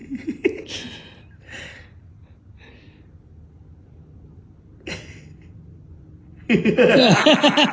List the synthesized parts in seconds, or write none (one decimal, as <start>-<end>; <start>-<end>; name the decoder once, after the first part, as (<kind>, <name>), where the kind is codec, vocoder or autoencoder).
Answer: none

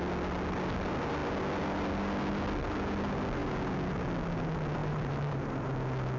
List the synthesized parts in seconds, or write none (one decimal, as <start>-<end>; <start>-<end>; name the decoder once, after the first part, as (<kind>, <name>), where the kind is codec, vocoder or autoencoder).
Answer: 4.8-5.5 (vocoder, BigVGAN v2)